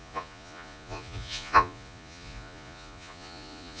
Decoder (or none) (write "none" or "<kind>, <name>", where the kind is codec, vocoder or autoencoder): vocoder, Vocos